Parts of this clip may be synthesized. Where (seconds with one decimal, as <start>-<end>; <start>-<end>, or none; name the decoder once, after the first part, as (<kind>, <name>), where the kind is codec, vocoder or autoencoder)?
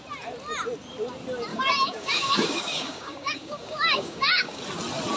1.5-4.6 (codec, DAC)